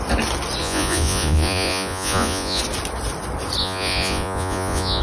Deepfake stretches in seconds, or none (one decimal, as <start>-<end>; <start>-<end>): 0.6-2.6; 3.6-5.0